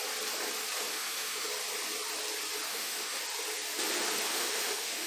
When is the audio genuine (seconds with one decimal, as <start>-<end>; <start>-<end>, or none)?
0.0-0.9; 1.5-2.7; 3.2-4.3